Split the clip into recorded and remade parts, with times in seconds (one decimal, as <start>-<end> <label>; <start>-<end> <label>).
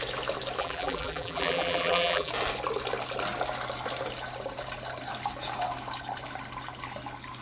0.0-0.6 recorded; 0.6-2.3 remade; 2.3-7.4 recorded